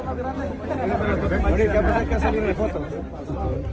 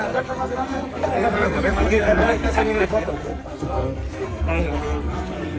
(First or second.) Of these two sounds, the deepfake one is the second